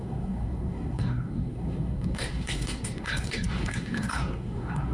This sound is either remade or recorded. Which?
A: remade